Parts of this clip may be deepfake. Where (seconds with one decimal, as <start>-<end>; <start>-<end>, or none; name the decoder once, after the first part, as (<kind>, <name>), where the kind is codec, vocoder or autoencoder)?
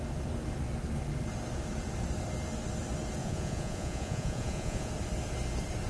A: 3.2-4.9 (vocoder, Vocos)